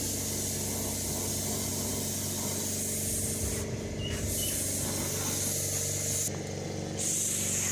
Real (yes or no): yes